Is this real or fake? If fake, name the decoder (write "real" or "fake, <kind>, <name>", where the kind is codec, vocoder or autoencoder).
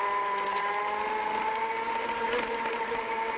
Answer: real